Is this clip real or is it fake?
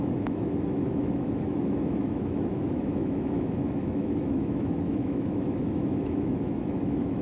fake